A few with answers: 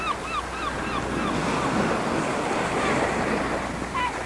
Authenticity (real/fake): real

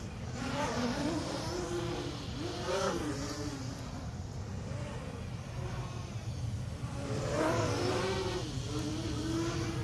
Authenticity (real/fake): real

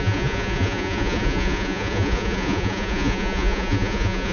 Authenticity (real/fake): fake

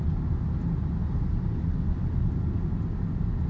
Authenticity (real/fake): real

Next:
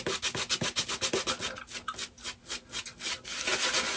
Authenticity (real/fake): real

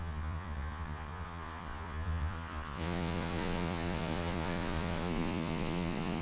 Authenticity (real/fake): fake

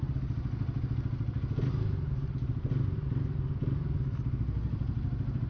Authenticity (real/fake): real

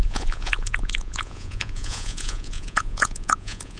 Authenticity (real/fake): fake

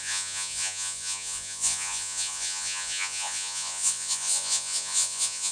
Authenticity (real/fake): fake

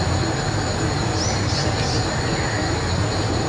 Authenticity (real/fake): real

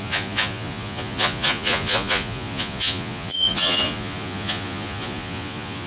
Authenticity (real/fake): fake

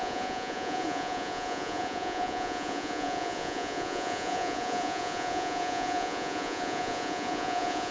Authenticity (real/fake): fake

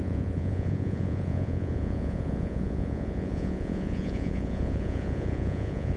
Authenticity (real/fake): fake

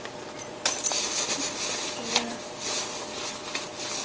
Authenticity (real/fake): real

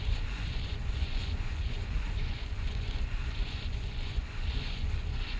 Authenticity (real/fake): fake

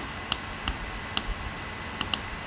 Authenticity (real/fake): real